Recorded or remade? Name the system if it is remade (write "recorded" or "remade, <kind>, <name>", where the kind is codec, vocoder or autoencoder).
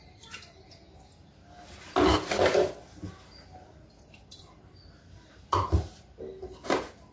recorded